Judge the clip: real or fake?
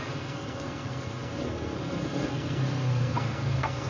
fake